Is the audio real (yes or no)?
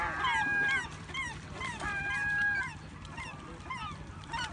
no